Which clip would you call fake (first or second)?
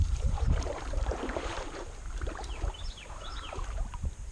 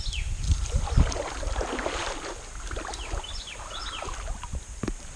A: first